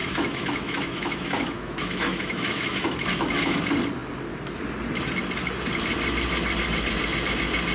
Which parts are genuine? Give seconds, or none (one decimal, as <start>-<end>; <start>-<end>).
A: 3.6-7.7

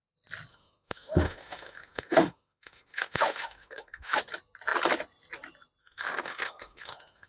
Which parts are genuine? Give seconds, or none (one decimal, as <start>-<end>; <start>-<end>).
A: 0.0-0.5; 4.2-5.8

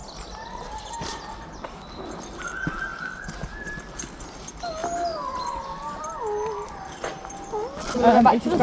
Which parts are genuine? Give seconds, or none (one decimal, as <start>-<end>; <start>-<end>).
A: 0.0-2.9; 3.7-4.8; 5.4-8.6

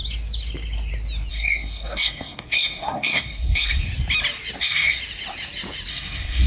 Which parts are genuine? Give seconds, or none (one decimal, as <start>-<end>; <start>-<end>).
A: 0.0-1.3; 3.8-4.6; 5.0-5.9

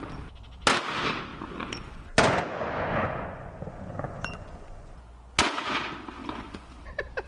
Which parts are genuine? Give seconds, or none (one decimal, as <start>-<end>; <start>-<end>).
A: 0.0-1.3; 5.7-6.2; 6.8-7.3

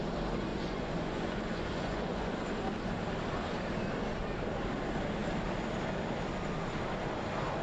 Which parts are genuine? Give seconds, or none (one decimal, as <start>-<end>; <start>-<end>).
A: 0.0-0.5; 2.3-7.6